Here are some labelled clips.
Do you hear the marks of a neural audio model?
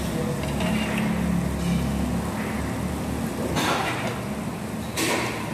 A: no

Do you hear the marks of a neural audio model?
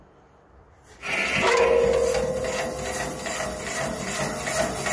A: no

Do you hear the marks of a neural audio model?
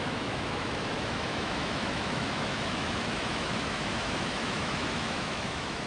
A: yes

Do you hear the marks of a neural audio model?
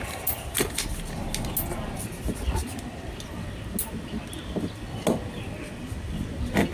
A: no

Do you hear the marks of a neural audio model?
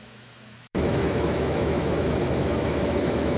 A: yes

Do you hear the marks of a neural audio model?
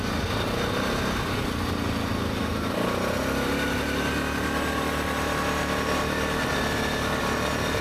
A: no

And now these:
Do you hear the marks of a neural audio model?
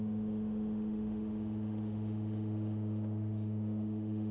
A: yes